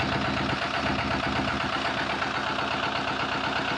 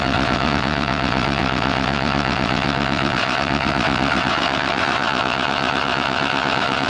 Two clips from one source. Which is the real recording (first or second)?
first